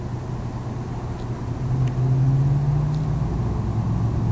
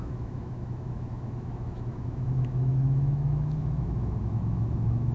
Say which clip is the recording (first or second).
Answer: first